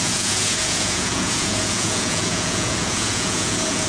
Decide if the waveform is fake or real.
fake